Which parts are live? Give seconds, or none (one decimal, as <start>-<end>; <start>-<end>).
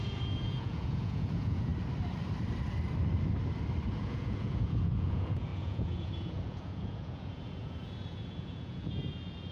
1.7-3.9